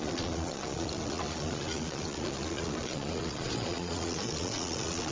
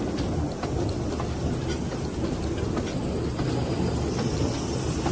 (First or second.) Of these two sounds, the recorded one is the second